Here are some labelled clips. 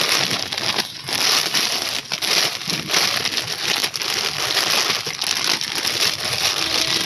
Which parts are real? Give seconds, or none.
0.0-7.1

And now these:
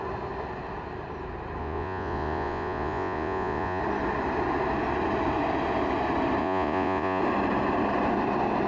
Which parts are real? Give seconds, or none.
0.0-1.6; 3.8-6.4; 7.2-8.7

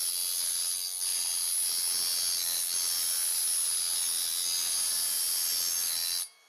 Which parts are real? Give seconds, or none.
0.0-6.5